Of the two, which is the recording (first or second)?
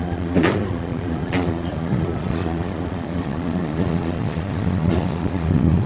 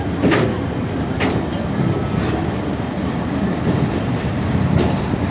second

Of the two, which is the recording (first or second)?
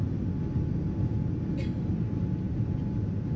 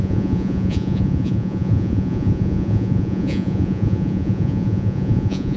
first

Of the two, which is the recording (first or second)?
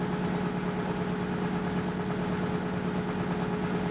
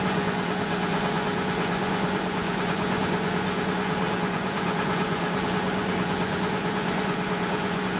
first